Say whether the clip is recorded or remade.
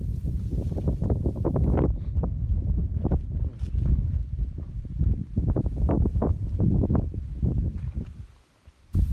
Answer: remade